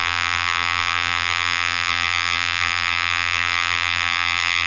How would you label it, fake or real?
fake